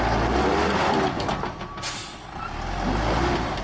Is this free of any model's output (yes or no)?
yes